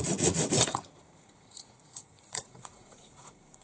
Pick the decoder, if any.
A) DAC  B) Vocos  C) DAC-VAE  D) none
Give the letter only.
B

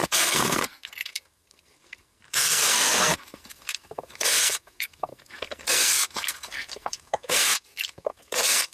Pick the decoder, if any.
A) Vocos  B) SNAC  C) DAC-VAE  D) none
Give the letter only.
B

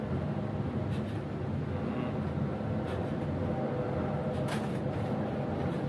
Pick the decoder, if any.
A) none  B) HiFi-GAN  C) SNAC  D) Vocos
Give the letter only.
A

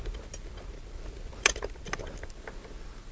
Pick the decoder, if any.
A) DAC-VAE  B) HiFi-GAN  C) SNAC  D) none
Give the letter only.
D